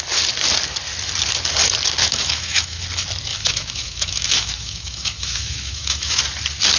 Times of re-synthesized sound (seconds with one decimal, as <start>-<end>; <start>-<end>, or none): 2.0-2.8; 3.3-6.2